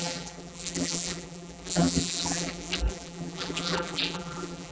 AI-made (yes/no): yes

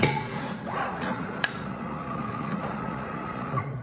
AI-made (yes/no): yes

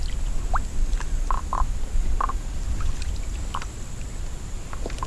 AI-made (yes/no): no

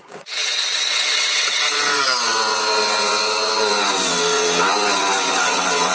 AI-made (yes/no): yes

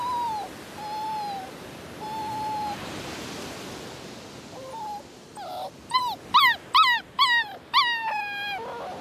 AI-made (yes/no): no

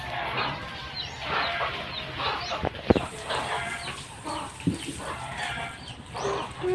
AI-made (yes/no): no